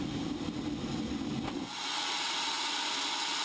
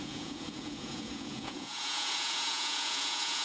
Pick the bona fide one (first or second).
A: first